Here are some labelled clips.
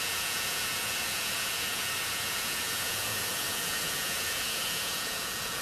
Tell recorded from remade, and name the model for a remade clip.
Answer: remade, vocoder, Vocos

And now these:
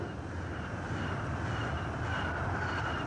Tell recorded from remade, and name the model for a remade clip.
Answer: recorded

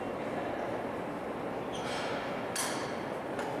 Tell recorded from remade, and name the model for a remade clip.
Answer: recorded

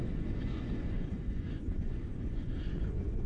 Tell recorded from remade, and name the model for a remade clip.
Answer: remade, vocoder, Vocos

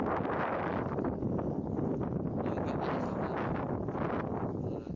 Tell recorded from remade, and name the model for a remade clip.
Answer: recorded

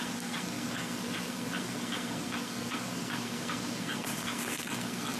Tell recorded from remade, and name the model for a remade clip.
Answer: remade, codec, SNAC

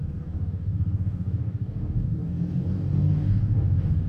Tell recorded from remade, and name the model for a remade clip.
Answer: remade, codec, DAC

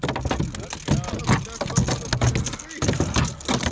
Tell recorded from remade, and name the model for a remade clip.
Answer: recorded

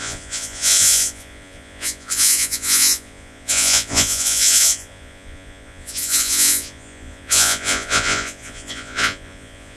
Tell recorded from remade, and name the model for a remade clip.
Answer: remade, vocoder, Vocos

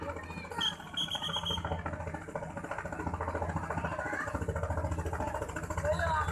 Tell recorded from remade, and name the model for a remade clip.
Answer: recorded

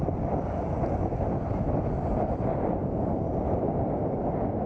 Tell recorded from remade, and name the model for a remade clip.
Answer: recorded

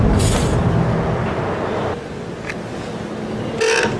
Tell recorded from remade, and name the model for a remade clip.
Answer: recorded